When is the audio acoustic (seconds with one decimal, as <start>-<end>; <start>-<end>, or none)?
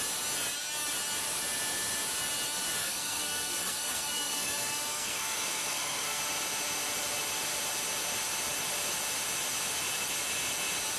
0.0-2.8; 6.2-11.0